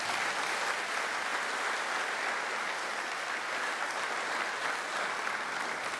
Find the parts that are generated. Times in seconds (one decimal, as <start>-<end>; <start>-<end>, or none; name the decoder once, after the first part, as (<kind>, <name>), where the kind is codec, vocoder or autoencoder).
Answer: none